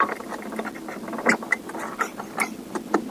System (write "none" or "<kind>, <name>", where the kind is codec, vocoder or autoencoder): none